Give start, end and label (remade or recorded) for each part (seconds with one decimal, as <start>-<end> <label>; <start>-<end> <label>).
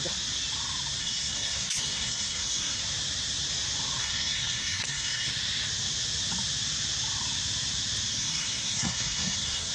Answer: 0.0-1.0 recorded; 1.0-2.8 remade; 2.8-4.0 recorded; 4.0-5.3 remade; 5.3-8.1 recorded; 8.1-9.7 remade